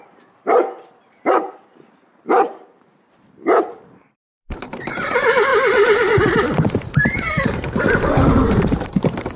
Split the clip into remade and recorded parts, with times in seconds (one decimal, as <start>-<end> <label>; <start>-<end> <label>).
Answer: 0.0-9.4 remade